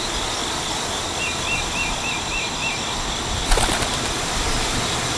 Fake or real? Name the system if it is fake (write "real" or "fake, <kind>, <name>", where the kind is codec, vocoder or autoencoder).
real